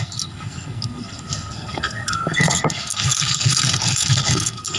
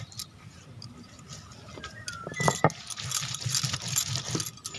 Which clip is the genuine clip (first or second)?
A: second